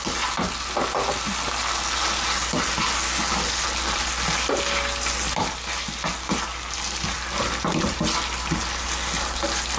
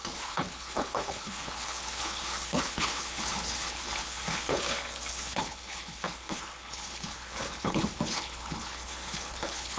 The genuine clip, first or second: first